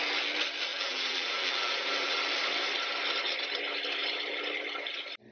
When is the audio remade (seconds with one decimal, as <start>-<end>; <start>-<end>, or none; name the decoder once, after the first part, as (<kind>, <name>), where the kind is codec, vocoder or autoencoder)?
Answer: 0.7-2.2 (vocoder, BigVGAN v2)